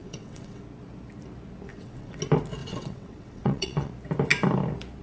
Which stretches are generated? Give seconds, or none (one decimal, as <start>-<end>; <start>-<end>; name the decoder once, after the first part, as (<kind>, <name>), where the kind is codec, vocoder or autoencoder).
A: 0.0-0.6 (vocoder, WaveNeXt); 1.7-2.2; 2.6-3.9